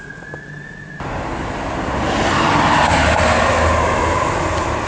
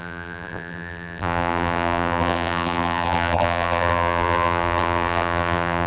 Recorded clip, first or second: first